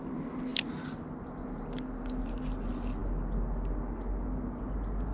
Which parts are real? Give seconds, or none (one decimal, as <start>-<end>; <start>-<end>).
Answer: 0.0-5.1